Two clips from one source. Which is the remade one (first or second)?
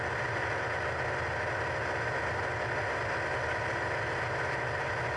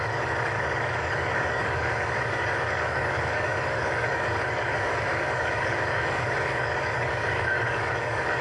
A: second